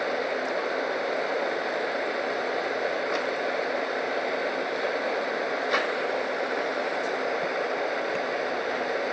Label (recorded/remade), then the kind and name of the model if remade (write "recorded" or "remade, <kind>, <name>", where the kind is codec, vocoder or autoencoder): recorded